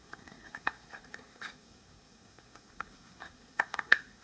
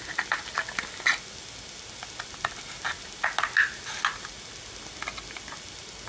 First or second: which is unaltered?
second